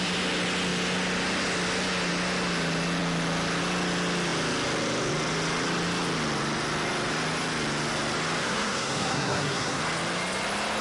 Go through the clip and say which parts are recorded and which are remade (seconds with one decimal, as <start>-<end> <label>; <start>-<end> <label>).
0.0-8.4 recorded; 8.4-9.8 remade; 9.8-10.8 recorded